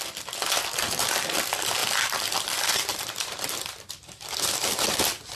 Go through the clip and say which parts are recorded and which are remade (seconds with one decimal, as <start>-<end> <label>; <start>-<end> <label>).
0.0-1.8 recorded; 1.8-5.0 remade; 5.0-5.4 recorded